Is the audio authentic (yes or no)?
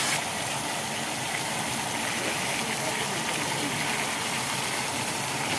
yes